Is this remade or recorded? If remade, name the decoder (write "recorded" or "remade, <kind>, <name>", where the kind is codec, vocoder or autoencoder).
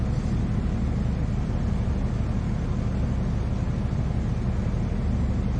recorded